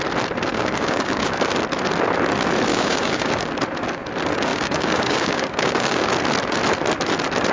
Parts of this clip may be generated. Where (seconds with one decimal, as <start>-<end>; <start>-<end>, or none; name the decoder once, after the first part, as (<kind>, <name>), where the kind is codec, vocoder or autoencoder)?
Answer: 0.5-1.5 (codec, DAC); 2.7-3.5; 4.5-6.1

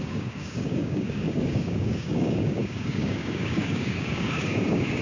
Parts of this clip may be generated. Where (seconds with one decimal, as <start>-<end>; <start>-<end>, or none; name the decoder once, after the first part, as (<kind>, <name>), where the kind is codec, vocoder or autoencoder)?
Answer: 0.0-5.0 (codec, DAC)